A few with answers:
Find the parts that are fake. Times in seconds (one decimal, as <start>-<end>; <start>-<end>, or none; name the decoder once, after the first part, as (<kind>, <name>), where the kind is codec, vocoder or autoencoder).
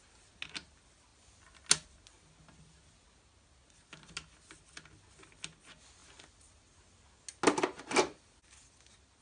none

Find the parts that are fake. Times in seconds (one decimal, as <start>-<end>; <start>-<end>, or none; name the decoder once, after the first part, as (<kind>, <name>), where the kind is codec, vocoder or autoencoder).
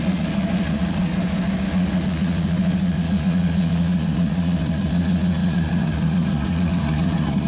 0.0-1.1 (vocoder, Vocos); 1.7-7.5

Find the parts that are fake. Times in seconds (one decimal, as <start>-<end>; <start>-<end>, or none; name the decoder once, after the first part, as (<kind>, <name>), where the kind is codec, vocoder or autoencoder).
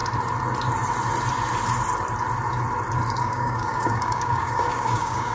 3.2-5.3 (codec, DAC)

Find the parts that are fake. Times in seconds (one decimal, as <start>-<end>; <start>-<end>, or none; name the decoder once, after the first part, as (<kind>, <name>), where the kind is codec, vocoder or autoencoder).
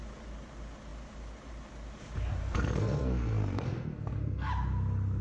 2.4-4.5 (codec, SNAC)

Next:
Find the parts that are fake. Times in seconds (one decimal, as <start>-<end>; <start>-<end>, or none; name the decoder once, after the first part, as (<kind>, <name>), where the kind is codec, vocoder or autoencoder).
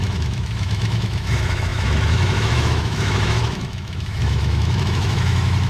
0.0-5.7 (autoencoder, DAC-VAE)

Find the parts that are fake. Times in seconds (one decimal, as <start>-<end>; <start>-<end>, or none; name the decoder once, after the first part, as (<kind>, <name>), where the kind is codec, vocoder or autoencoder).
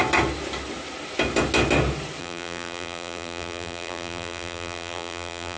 2.2-5.6 (vocoder, BigVGAN v2)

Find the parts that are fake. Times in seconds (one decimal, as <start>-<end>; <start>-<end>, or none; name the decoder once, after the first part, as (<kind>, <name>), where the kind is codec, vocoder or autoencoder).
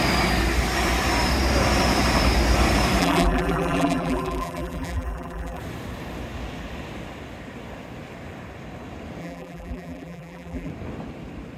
3.0-5.6 (vocoder, BigVGAN v2); 9.2-10.7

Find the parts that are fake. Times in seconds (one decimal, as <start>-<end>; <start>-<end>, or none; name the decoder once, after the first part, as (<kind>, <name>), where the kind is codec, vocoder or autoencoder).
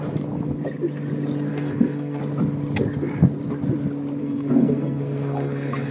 1.5-2.2 (codec, SNAC); 4.2-5.9